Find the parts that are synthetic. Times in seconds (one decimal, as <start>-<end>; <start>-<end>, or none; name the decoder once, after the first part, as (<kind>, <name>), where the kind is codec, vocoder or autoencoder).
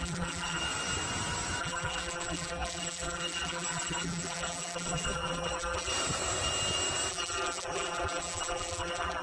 0.0-0.6 (vocoder, BigVGAN v2); 1.6-5.9; 7.1-9.2